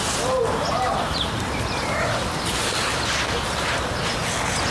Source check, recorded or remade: remade